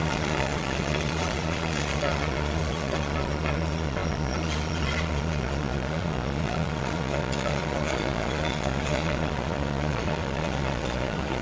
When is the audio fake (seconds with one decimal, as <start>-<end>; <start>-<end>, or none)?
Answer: 0.0-11.4

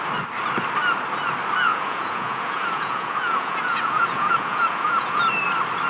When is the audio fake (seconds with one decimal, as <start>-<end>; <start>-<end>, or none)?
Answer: 1.7-5.2